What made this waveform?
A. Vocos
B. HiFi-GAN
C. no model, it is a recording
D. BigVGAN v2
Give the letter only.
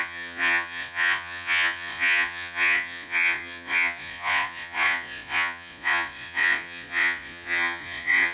A